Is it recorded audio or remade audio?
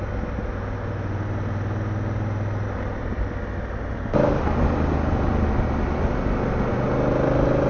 recorded